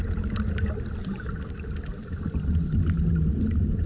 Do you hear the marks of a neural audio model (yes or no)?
no